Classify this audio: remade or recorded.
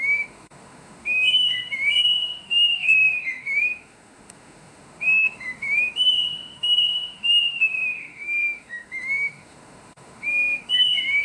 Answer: remade